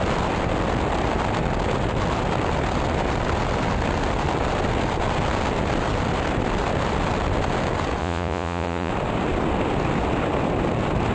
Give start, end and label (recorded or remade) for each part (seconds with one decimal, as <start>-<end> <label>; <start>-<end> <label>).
0.0-8.0 recorded; 8.0-8.9 remade; 8.9-11.1 recorded